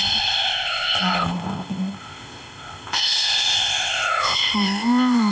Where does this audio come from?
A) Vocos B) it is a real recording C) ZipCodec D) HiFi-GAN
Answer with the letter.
C